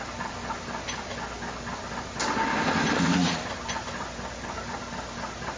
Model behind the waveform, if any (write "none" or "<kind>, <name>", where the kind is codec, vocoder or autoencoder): none